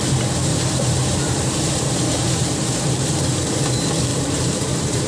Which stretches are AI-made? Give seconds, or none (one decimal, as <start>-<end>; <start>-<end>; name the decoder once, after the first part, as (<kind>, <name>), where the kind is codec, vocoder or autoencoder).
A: 0.5-3.6 (vocoder, BigVGAN v2); 4.1-5.1